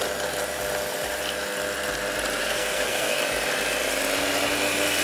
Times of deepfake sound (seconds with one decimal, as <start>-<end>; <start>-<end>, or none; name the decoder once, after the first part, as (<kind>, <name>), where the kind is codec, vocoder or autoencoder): 2.4-3.2 (codec, SNAC)